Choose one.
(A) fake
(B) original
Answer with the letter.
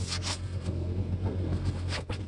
A